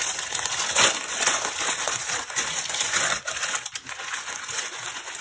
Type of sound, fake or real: fake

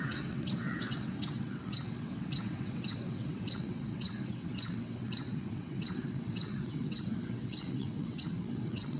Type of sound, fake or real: fake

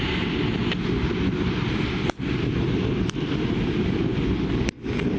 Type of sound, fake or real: real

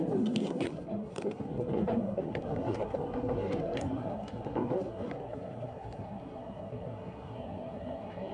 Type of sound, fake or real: fake